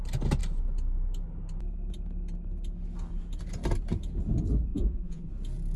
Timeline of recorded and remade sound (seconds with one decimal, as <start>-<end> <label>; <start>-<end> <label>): 0.0-4.7 recorded; 4.7-5.3 remade; 5.3-5.8 recorded